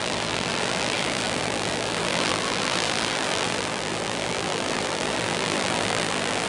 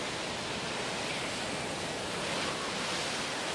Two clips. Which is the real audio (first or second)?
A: second